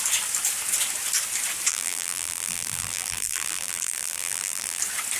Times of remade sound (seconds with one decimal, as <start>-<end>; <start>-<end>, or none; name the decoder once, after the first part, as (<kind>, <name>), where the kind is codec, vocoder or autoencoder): 1.7-4.8 (vocoder, BigVGAN v2)